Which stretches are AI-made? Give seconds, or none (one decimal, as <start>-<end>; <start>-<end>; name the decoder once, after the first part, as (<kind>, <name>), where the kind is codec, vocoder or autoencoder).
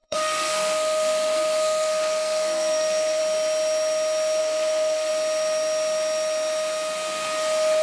0.0-3.2 (codec, SNAC); 4.4-5.1